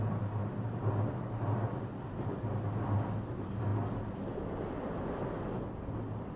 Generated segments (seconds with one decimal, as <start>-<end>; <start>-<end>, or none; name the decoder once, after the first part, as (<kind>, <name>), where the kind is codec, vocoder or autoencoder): none